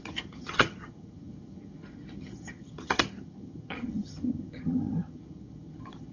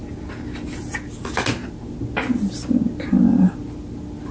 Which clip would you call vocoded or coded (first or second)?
first